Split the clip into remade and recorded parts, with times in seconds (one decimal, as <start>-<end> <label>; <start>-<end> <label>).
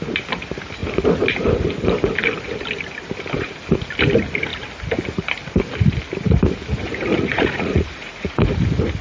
0.0-6.8 recorded; 6.8-8.4 remade; 8.4-9.0 recorded